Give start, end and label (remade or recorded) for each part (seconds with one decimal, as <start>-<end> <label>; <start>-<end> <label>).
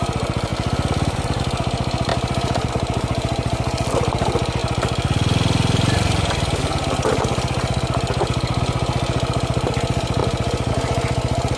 0.0-2.1 recorded; 2.1-2.7 remade; 2.7-11.6 recorded